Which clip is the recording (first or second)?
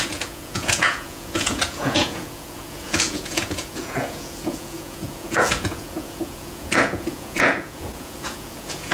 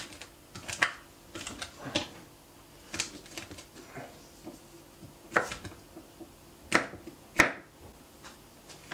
second